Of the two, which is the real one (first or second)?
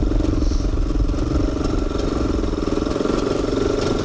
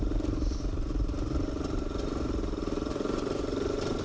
first